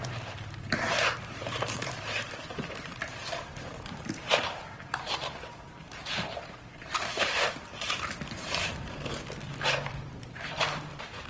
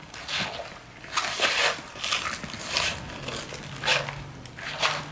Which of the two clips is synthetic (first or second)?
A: first